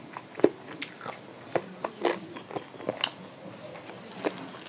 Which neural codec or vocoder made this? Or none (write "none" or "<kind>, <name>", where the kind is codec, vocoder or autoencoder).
none